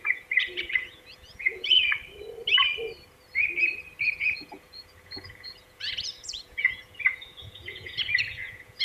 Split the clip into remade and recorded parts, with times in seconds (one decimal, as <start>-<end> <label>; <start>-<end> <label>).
0.0-1.8 remade; 1.8-4.1 recorded; 4.1-8.8 remade